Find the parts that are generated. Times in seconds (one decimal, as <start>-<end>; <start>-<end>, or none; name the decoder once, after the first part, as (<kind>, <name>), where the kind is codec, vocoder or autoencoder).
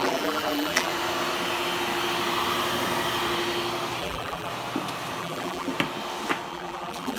0.0-0.9 (vocoder, BigVGAN v2); 4.0-4.5; 5.2-5.7; 6.5-7.2